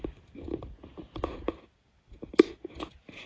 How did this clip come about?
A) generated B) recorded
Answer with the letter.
B